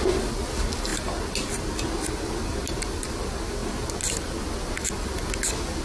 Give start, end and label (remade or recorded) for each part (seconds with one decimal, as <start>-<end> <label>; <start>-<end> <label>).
0.0-5.8 recorded